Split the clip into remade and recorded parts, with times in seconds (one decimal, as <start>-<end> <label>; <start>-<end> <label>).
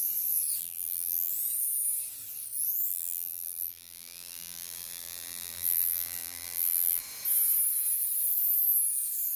0.0-0.6 recorded; 0.6-1.3 remade; 1.3-2.9 recorded; 2.9-7.0 remade; 7.0-9.4 recorded